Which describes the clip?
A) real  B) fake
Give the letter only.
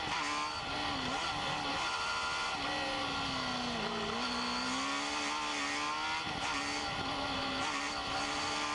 A